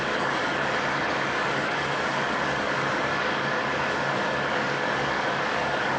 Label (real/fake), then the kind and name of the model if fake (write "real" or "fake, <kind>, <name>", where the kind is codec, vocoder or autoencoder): fake, codec, DAC